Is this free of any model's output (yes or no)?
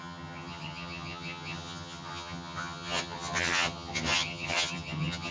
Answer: no